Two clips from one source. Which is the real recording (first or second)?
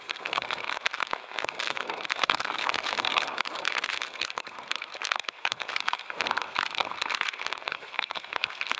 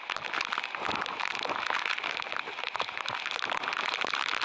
second